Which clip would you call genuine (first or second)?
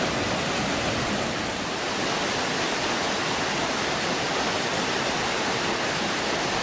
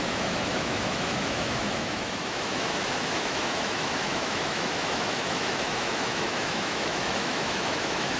first